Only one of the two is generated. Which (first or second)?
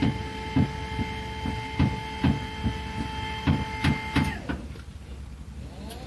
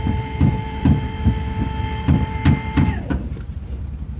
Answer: second